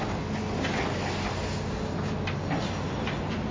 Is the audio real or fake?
real